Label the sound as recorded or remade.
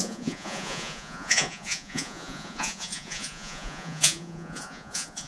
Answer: remade